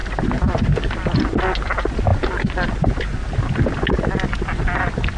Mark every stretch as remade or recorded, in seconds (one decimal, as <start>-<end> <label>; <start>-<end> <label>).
0.0-5.2 recorded